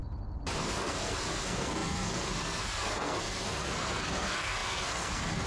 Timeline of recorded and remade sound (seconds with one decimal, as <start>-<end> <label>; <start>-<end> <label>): 0.0-0.6 recorded; 0.6-5.5 remade